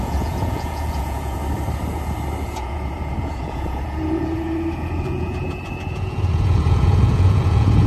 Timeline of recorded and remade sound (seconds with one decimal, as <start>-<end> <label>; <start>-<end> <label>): 0.0-1.4 remade; 1.4-2.4 recorded; 2.4-7.9 remade